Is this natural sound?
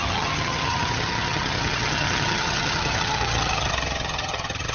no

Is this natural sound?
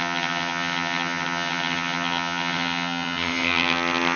no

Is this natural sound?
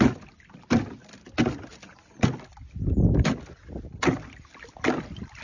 yes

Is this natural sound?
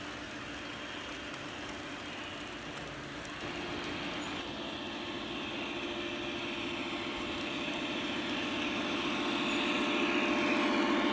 yes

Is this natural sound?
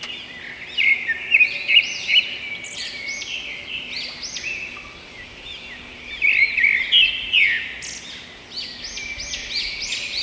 yes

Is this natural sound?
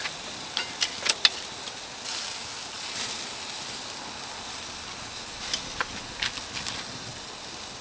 yes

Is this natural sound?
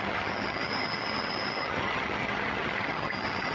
no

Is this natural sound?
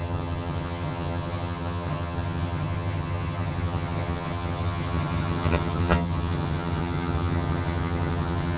no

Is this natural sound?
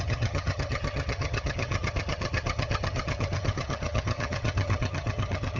no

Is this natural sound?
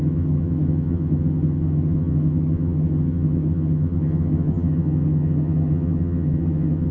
no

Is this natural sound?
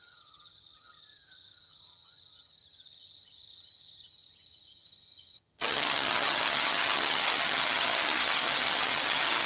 no